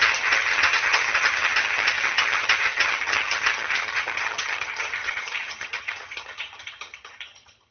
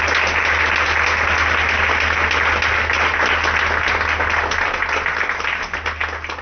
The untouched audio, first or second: second